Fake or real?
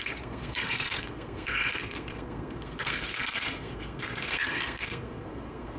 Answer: fake